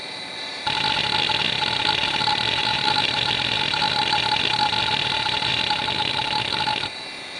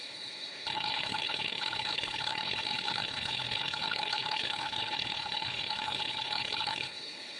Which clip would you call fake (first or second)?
second